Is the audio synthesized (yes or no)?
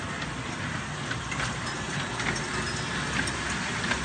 no